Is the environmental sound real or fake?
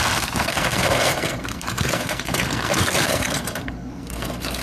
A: fake